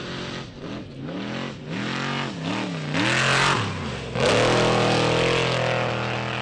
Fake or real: real